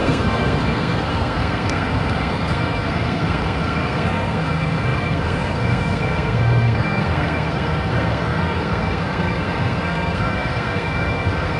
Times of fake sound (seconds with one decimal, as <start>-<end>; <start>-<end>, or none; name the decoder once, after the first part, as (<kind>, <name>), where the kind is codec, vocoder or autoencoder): 0.0-11.6 (codec, SNAC)